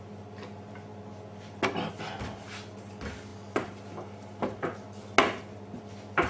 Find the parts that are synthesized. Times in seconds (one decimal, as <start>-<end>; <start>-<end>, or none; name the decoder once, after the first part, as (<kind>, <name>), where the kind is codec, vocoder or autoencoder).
none